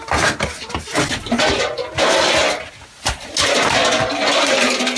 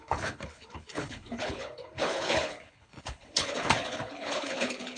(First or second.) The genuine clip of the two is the first